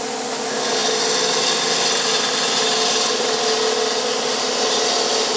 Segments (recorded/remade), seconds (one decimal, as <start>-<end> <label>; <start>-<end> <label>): 0.0-5.4 recorded